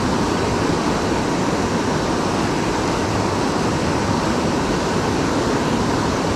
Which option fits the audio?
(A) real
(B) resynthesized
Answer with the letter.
A